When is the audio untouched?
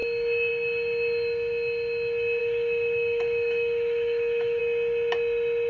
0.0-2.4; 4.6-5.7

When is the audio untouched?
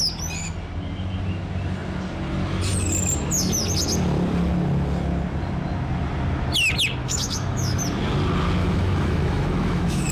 0.0-7.0; 7.8-8.6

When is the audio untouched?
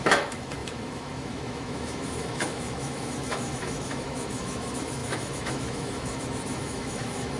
none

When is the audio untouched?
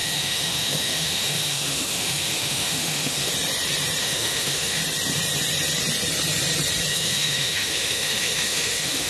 3.3-4.0; 4.8-6.9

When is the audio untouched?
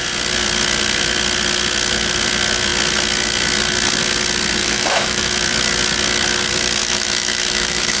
0.0-4.6; 5.3-6.8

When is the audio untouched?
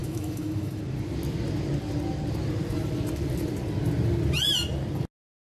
0.8-5.6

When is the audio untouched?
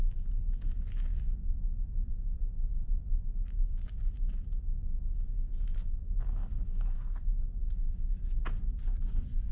0.0-9.5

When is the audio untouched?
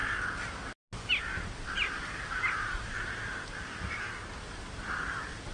0.0-5.5